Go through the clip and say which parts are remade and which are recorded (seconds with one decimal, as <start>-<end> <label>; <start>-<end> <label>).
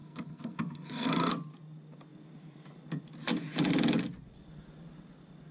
0.0-1.3 remade; 1.3-5.5 recorded